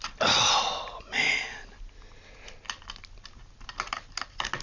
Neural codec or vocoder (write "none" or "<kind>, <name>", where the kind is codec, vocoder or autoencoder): none